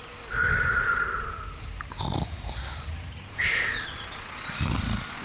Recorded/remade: recorded